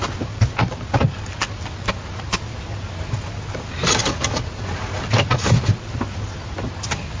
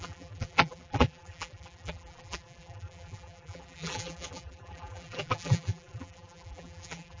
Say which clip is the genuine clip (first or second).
first